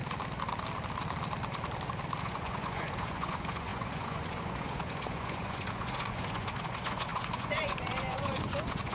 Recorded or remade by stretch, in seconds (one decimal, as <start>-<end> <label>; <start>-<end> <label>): 0.0-2.2 recorded; 2.2-8.9 remade